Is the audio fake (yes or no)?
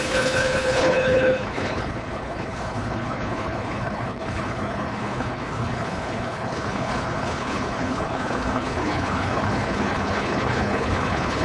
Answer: yes